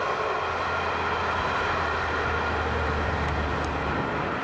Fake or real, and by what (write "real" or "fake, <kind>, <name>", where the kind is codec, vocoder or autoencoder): real